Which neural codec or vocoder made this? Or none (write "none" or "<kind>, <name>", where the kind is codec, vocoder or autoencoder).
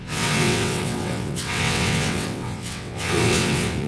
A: vocoder, WaveNeXt